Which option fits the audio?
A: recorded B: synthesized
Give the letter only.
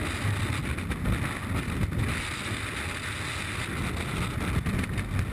A